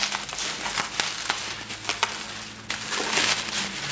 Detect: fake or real real